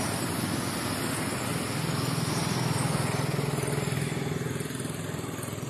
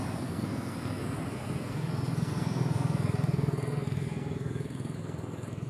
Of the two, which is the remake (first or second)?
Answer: second